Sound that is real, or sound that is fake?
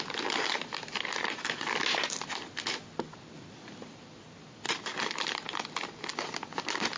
real